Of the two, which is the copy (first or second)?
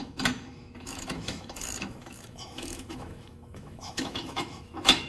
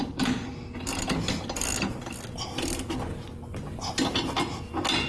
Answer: first